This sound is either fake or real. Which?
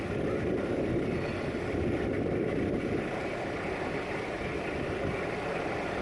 real